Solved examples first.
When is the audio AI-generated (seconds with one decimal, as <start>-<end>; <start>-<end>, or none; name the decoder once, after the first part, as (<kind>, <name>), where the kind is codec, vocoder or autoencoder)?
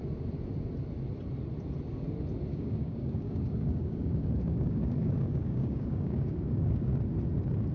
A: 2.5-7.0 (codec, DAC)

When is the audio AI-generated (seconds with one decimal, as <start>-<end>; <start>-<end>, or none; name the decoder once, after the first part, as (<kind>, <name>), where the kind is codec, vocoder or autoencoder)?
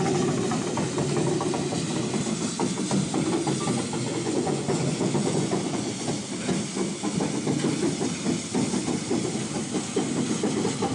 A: 4.1-6.1 (vocoder, Vocos)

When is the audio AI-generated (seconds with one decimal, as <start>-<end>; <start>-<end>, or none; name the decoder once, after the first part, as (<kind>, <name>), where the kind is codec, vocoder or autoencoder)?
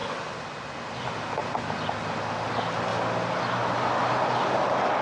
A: none